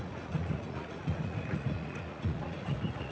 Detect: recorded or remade remade